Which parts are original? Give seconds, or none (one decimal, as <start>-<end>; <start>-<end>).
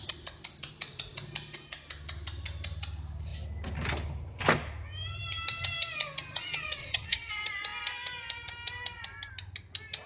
0.0-6.8; 7.3-10.1